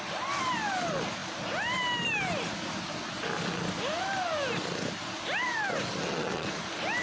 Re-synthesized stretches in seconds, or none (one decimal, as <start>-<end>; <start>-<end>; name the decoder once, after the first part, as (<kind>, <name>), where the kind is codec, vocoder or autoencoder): 6.0-6.5 (vocoder, WaveNeXt)